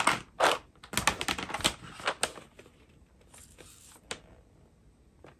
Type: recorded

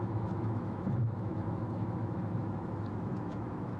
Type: remade